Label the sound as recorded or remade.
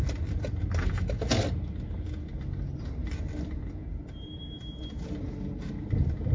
recorded